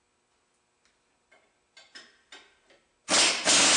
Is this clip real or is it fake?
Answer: real